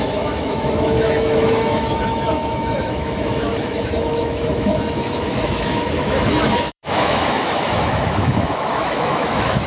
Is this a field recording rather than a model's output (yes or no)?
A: no